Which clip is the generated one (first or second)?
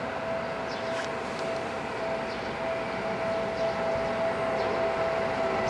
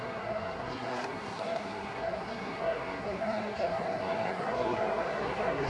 second